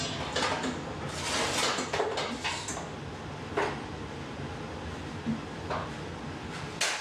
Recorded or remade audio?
recorded